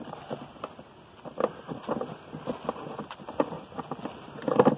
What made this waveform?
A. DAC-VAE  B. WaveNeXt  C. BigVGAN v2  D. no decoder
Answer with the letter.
D